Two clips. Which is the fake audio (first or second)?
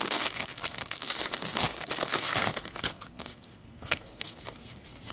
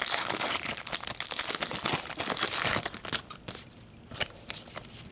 first